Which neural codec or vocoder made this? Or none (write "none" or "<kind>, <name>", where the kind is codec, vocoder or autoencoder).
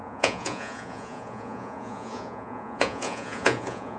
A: vocoder, Vocos